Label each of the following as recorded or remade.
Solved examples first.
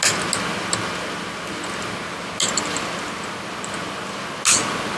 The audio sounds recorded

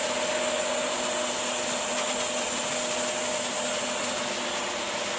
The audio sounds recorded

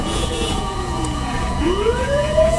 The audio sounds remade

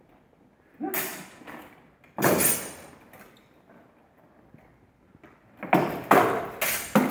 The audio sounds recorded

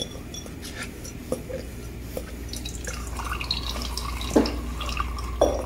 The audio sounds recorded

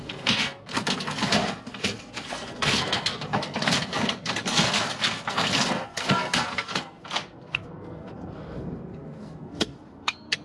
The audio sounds remade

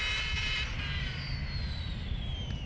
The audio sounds recorded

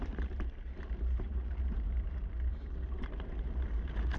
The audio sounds remade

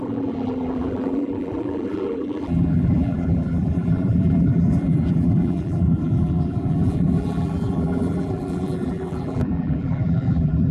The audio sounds remade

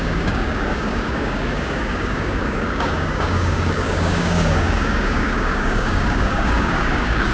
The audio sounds remade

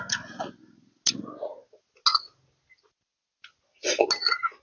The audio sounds recorded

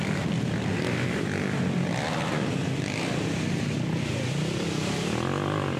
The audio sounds recorded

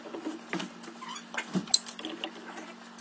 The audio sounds recorded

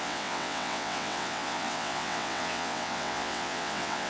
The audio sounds remade